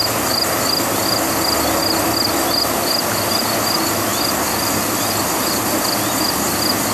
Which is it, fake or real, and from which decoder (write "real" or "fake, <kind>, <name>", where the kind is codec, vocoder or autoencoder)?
real